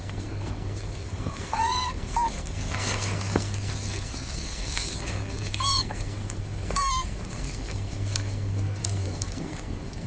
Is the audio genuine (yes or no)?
no